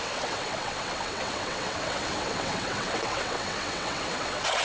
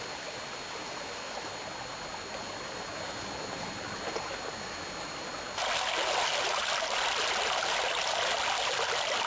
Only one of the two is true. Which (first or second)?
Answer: second